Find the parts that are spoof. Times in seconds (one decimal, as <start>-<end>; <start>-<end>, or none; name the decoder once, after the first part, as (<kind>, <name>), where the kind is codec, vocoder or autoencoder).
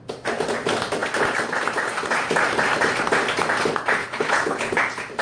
4.0-4.8 (codec, HILCodec)